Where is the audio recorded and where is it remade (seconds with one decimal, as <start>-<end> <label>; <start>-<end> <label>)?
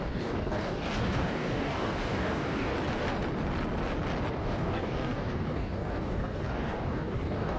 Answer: 0.0-2.7 remade; 2.7-4.3 recorded; 4.3-7.6 remade